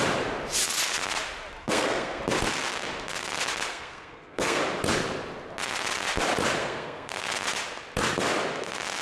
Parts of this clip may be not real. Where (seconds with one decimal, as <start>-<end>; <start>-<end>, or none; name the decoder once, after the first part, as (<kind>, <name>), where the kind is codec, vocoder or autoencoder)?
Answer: 1.6-2.2 (codec, SNAC); 3.7-4.6; 6.6-7.3